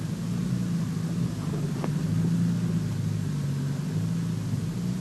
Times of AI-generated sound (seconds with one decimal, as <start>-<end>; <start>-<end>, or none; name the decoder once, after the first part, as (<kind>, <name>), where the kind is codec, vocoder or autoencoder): none